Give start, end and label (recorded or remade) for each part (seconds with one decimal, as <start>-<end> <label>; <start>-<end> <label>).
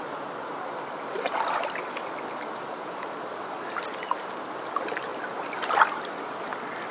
0.0-5.1 recorded; 5.1-5.7 remade; 5.7-6.9 recorded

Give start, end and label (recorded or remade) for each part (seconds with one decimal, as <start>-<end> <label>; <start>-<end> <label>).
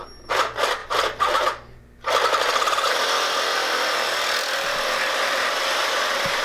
0.0-6.4 recorded